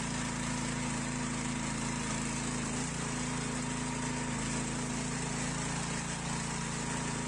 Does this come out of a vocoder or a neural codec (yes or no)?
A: no